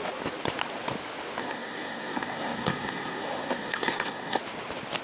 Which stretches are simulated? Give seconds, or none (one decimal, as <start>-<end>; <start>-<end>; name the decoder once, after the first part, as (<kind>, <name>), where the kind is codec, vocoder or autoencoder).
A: 1.4-4.4 (codec, SNAC)